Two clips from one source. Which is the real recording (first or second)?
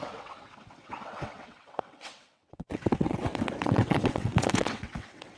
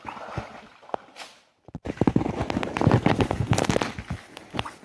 second